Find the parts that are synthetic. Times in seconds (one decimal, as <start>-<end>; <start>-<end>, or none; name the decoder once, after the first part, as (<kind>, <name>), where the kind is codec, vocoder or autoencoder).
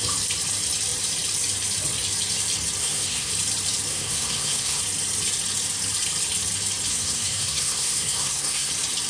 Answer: 2.8-3.3 (codec, SNAC); 3.9-4.8; 6.9-8.7